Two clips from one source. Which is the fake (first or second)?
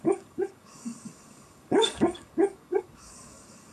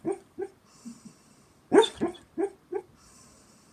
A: first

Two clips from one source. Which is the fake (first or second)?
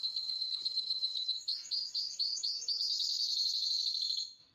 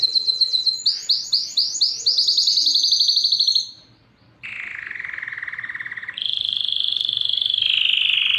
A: first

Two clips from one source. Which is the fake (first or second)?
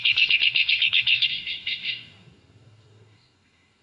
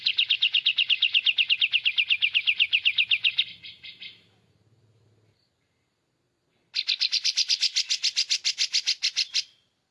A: first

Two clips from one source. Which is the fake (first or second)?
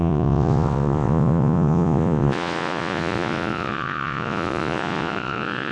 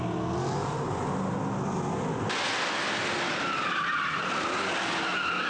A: first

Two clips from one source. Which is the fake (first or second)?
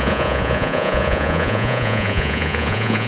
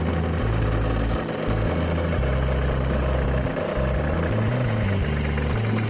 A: first